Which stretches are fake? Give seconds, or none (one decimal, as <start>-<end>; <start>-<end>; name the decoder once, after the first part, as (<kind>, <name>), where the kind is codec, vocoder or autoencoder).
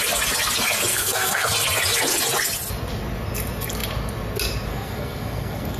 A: 0.9-1.5 (codec, SNAC); 4.7-5.8